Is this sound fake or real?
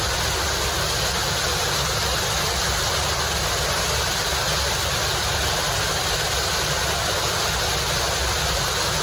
real